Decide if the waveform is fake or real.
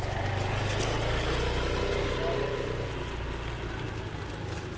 real